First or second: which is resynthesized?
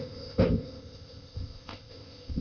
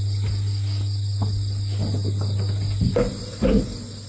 first